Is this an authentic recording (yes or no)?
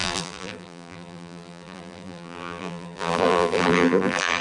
no